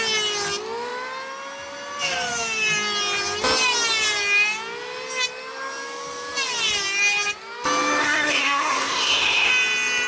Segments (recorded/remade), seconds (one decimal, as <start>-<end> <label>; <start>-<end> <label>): 0.0-8.0 recorded; 8.0-9.5 remade; 9.5-10.1 recorded